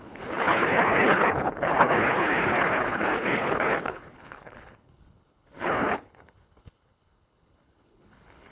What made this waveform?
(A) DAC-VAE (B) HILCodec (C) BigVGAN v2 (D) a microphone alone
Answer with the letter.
B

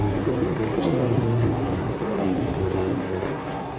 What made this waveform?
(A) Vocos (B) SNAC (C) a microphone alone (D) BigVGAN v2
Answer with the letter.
B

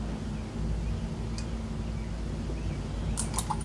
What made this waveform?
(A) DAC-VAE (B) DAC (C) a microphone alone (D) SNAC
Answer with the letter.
C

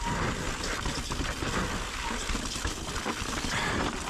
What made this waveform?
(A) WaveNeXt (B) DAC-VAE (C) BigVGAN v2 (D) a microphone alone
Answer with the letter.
D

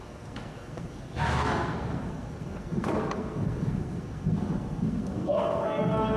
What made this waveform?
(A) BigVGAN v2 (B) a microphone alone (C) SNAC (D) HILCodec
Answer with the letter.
C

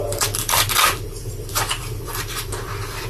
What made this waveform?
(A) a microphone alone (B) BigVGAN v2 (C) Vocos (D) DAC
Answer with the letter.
B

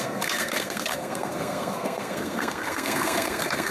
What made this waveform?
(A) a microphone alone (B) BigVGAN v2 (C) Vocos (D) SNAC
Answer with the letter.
D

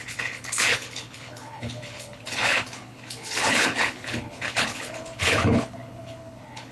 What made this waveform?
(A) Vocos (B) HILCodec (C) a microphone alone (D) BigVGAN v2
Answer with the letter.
B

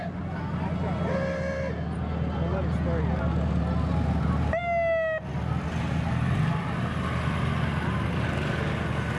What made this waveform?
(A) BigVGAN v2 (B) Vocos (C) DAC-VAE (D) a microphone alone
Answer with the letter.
D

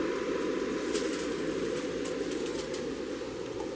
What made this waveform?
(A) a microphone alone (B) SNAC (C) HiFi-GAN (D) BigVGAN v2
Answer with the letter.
A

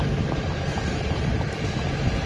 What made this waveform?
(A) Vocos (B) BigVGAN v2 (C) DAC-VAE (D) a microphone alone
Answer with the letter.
D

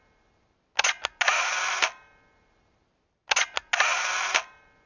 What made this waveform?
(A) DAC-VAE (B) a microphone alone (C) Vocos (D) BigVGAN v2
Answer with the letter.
B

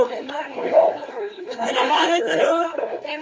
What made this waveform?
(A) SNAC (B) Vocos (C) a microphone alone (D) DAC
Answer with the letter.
A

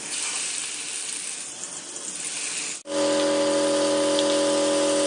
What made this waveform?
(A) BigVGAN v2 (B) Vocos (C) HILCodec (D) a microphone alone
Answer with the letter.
D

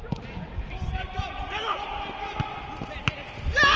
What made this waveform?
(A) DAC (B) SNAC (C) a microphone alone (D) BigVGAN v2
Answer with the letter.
C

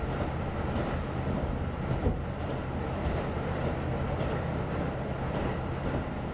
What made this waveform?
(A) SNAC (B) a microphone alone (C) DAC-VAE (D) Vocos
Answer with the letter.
B